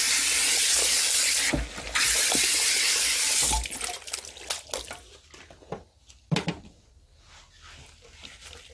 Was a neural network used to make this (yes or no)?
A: no